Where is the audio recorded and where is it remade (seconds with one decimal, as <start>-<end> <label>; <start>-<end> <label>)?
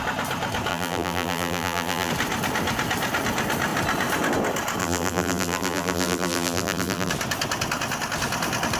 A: 0.0-0.7 recorded; 0.7-2.1 remade; 2.1-4.8 recorded; 4.8-7.1 remade; 7.1-8.8 recorded